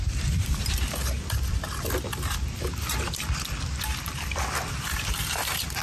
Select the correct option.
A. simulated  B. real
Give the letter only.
A